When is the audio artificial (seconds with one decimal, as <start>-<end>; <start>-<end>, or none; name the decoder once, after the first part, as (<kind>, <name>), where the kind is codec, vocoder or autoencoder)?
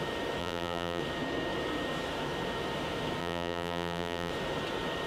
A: 0.4-1.0 (vocoder, BigVGAN v2); 3.2-4.3